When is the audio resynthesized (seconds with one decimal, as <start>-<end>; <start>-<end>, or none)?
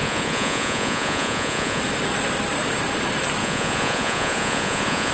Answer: 0.0-1.8; 3.4-5.1